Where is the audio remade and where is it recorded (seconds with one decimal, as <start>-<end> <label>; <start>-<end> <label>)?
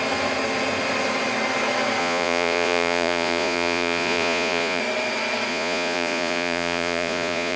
0.0-2.0 recorded; 2.0-4.8 remade; 4.8-5.5 recorded; 5.5-7.6 remade